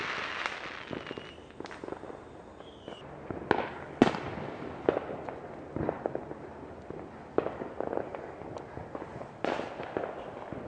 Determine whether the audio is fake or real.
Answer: real